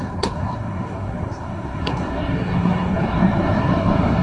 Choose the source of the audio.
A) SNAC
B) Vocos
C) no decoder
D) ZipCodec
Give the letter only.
A